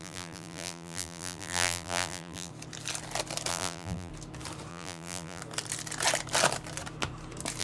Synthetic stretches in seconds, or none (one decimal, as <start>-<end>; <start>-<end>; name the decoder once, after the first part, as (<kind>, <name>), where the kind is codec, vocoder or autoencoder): 0.0-2.5 (vocoder, BigVGAN v2); 3.5-4.1; 4.7-5.4